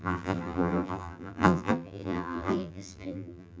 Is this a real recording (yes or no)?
no